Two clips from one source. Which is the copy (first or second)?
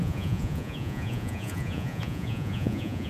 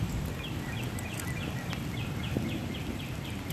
first